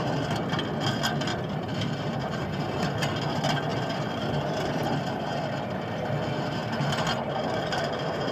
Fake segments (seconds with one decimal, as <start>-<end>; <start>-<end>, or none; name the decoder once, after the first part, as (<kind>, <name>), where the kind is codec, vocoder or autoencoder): 1.3-2.5 (vocoder, BigVGAN v2); 3.7-5.5